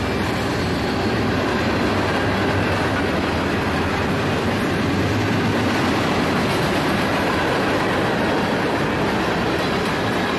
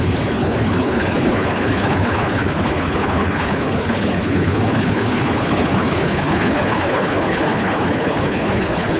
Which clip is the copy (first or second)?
second